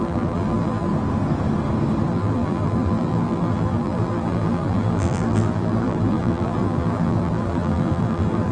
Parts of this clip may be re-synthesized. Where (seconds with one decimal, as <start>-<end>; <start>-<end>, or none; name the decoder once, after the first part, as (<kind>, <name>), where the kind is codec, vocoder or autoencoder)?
0.0-0.9 (vocoder, BigVGAN v2); 2.1-8.5